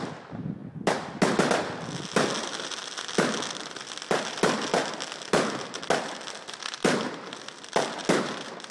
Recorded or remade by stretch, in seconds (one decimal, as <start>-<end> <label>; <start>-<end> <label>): 0.0-8.7 recorded